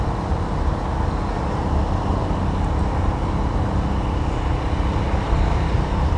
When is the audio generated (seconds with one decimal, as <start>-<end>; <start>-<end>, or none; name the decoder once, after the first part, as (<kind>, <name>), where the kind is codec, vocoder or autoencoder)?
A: 0.0-0.9 (vocoder, BigVGAN v2); 4.5-6.2